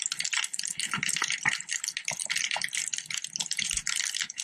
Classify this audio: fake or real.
real